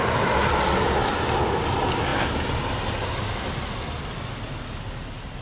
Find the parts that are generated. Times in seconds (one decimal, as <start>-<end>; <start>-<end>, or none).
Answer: none